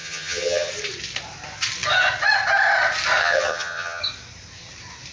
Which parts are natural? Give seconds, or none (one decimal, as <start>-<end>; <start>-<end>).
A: 0.7-3.2; 4.0-5.1